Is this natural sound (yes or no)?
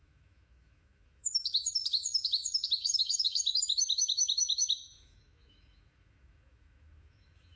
no